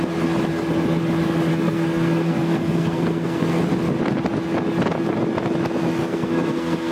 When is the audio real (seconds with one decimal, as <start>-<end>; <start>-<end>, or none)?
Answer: 0.0-1.5; 3.6-6.0